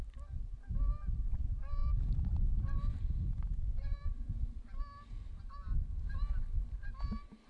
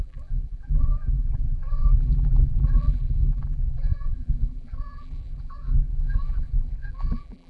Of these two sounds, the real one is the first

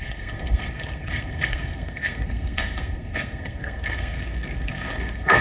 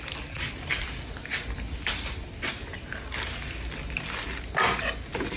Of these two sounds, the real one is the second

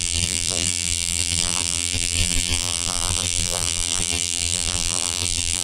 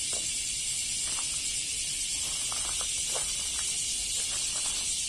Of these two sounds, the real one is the second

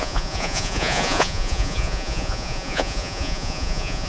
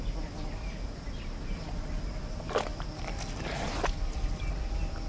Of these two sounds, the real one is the second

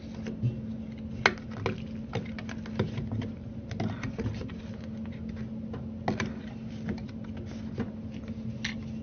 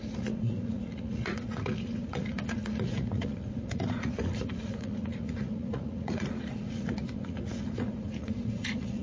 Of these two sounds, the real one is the first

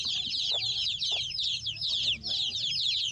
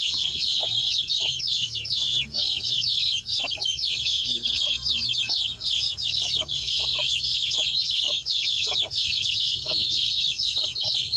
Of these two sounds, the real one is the first